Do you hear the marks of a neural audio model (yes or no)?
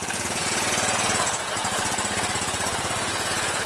yes